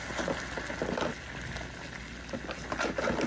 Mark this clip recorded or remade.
recorded